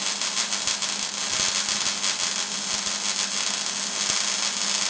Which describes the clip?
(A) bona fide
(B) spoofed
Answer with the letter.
A